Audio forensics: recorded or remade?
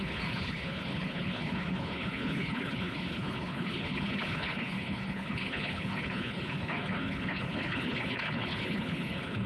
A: remade